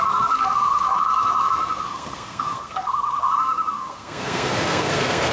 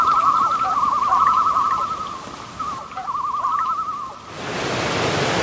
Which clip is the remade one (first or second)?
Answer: first